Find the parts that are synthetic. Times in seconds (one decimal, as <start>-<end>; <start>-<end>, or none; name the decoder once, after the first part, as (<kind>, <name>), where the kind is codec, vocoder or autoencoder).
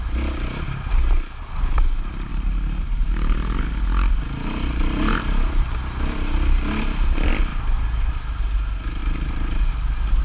9.0-9.7 (vocoder, BigVGAN v2)